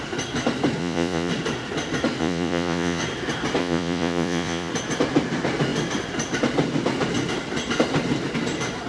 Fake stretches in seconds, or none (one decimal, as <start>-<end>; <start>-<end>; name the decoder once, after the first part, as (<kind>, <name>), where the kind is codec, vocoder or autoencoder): 0.8-1.3 (vocoder, Vocos); 2.2-3.0; 3.6-4.7